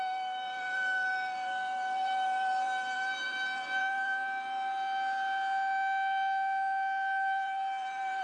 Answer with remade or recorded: remade